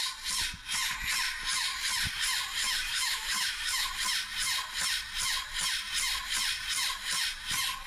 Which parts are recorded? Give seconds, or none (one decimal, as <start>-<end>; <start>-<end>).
0.0-2.6; 3.9-7.9